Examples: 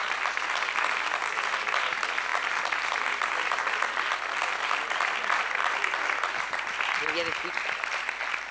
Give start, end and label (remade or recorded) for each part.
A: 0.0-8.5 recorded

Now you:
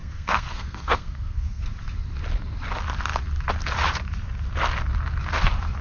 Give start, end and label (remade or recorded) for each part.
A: 0.0-1.6 remade; 1.6-5.8 recorded

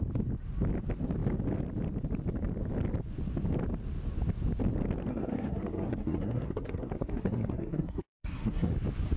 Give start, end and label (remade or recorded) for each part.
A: 0.0-5.1 recorded; 5.1-8.7 remade; 8.7-9.2 recorded

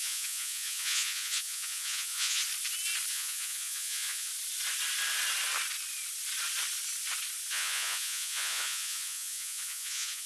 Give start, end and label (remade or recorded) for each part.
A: 0.0-2.4 remade; 2.4-3.1 recorded; 3.1-4.3 remade; 4.3-7.5 recorded; 7.5-10.3 remade

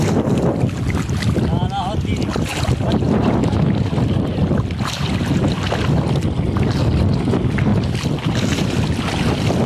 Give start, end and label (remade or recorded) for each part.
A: 0.0-2.5 recorded; 2.5-6.1 remade; 6.1-7.7 recorded; 7.7-8.4 remade; 8.4-9.7 recorded

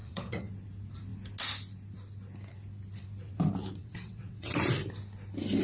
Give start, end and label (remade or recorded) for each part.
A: 0.0-0.5 remade; 0.5-3.8 recorded; 3.8-4.6 remade; 4.6-5.6 recorded

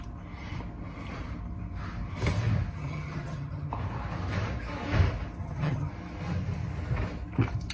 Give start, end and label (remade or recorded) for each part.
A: 0.0-2.7 recorded; 2.7-3.7 remade; 3.7-5.4 recorded; 5.4-5.9 remade; 5.9-7.7 recorded

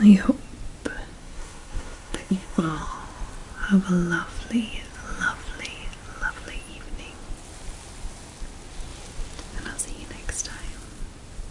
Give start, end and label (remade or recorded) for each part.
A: 0.0-1.2 recorded; 1.2-3.0 remade; 3.0-11.5 recorded